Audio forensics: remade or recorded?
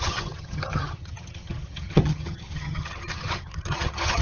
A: remade